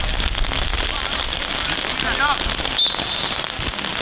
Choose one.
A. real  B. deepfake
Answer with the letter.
A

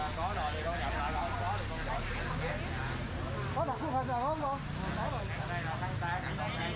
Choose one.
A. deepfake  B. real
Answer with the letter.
B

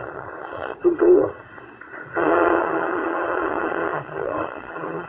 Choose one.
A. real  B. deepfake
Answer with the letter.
B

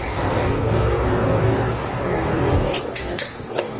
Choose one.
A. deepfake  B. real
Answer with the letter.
A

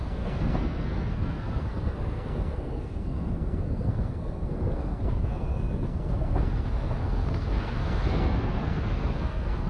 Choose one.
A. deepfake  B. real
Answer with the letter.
A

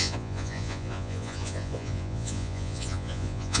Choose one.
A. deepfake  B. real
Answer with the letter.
A